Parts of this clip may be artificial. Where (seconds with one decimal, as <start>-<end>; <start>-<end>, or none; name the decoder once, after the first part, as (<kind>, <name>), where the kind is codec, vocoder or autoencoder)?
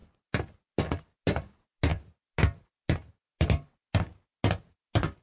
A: none